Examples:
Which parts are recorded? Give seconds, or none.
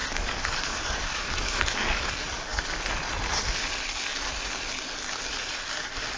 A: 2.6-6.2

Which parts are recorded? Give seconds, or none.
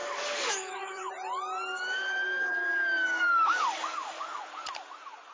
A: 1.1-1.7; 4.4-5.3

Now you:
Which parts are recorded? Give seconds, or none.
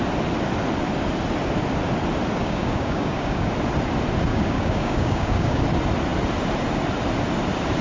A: 0.0-2.4; 3.5-4.3; 5.6-7.8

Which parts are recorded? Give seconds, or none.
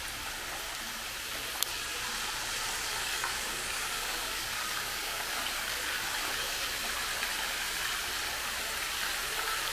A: 0.0-2.9; 6.8-9.7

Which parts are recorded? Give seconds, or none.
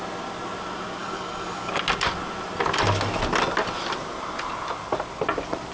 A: 0.0-1.0; 1.7-5.7